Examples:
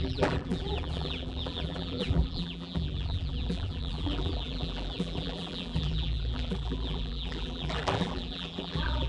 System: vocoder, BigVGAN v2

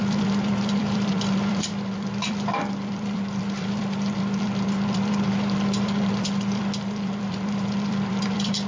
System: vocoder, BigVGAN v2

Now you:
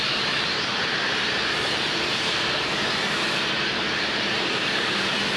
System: vocoder, BigVGAN v2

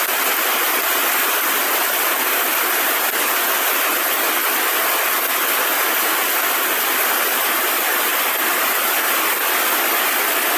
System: none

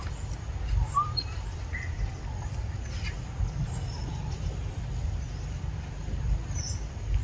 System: vocoder, BigVGAN v2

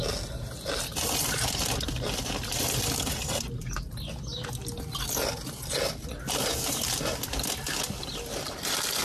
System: none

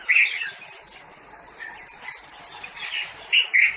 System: vocoder, BigVGAN v2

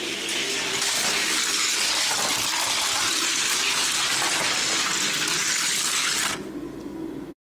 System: none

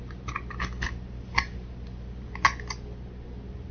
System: none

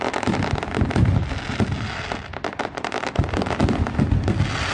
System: none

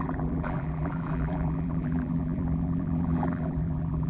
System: vocoder, BigVGAN v2